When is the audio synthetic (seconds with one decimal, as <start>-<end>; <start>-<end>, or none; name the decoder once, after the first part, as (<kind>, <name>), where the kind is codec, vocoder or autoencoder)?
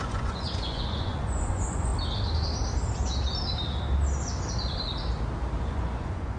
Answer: 0.0-1.9 (vocoder, Vocos); 5.6-6.4